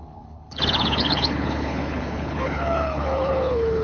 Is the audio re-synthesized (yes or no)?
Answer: yes